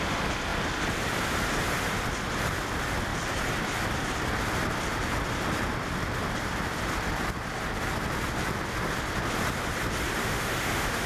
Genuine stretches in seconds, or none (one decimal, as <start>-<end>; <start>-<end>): 0.0-10.2